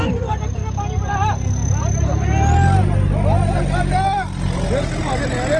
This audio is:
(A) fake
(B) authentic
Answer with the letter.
B